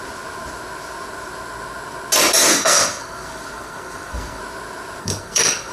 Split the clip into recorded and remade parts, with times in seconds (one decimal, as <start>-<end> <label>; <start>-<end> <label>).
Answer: 0.0-2.5 recorded; 2.5-4.4 remade; 4.4-5.0 recorded; 5.0-5.7 remade